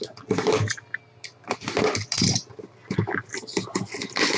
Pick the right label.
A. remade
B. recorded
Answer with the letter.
B